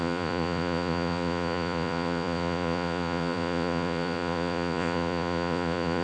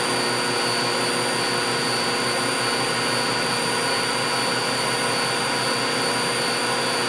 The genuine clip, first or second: second